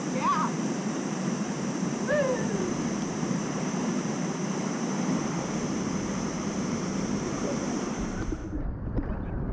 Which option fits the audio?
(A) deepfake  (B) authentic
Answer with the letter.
A